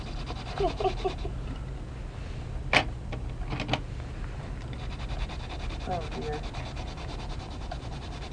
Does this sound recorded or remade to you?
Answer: recorded